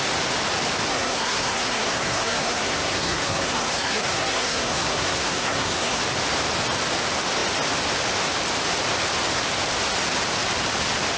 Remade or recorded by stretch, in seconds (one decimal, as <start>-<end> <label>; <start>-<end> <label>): 0.0-0.9 recorded; 0.9-6.0 remade; 6.0-11.2 recorded